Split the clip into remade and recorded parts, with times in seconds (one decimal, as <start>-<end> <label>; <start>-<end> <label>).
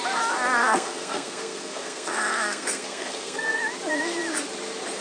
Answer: 0.0-0.6 recorded; 0.6-3.6 remade; 3.6-5.0 recorded